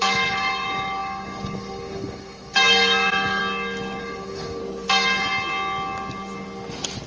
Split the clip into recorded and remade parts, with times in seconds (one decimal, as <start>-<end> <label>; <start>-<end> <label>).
0.0-3.4 remade; 3.4-4.0 recorded; 4.0-4.6 remade; 4.6-7.1 recorded